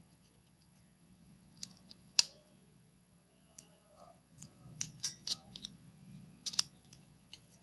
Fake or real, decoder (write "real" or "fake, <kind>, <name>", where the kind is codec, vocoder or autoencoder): fake, vocoder, Vocos